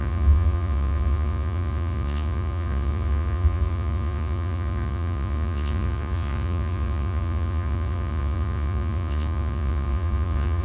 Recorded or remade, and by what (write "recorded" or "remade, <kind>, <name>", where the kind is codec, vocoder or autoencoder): remade, vocoder, Vocos